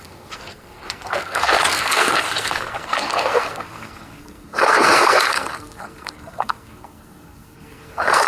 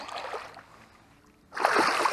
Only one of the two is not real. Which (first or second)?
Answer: first